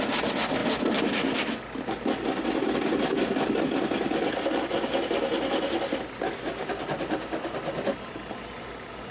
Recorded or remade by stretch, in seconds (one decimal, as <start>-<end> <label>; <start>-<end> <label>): 0.0-9.1 recorded